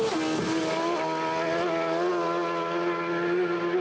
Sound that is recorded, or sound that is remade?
recorded